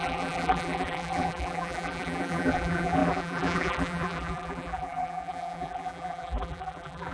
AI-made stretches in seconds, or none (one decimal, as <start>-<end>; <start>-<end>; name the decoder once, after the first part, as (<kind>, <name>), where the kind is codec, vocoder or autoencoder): 0.0-7.1 (vocoder, BigVGAN v2)